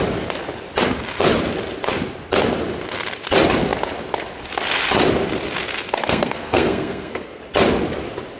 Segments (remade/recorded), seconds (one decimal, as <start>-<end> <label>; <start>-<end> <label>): 0.0-6.0 recorded; 6.0-7.4 remade; 7.4-8.4 recorded